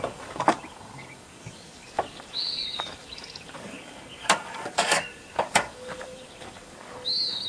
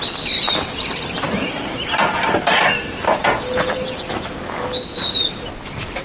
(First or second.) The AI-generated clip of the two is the first